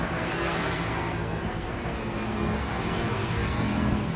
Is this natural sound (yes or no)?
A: no